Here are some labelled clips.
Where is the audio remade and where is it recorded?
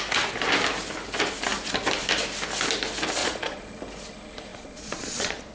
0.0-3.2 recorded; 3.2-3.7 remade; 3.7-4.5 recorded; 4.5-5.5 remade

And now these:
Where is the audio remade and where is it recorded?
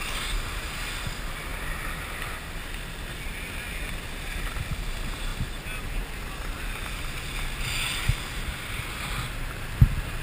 0.0-10.2 recorded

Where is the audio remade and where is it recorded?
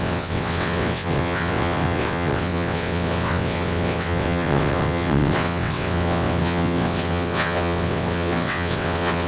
0.0-9.3 remade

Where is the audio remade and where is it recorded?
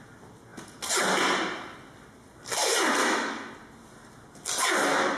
0.0-3.0 recorded; 3.0-3.5 remade; 3.5-5.2 recorded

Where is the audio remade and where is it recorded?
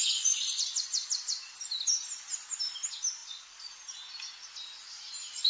0.0-0.7 remade; 0.7-3.2 recorded; 3.2-3.8 remade; 3.8-5.5 recorded